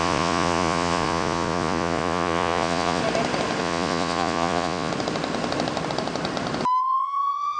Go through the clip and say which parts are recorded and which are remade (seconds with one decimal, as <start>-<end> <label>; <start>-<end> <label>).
0.0-3.0 remade; 3.0-3.6 recorded; 3.6-4.9 remade; 4.9-6.8 recorded; 6.8-7.6 remade